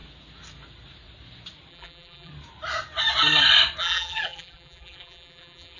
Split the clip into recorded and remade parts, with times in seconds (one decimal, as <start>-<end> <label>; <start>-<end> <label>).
0.0-1.7 recorded; 1.7-2.3 remade; 2.3-3.8 recorded; 3.8-5.8 remade